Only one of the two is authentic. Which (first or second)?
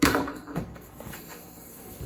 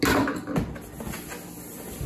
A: second